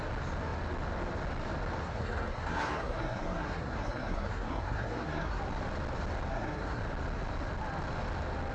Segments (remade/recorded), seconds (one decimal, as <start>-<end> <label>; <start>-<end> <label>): 0.0-1.8 recorded; 1.8-5.4 remade; 5.4-6.3 recorded; 6.3-6.8 remade; 6.8-8.5 recorded